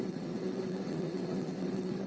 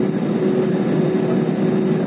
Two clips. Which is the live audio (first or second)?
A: second